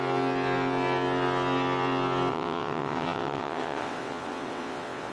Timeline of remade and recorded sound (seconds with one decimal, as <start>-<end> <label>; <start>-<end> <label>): 0.0-2.3 recorded; 2.3-5.1 remade